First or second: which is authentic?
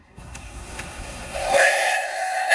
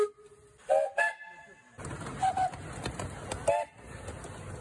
second